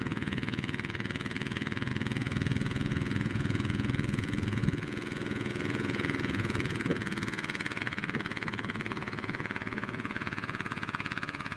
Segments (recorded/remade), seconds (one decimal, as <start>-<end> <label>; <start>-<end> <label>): 0.0-11.6 remade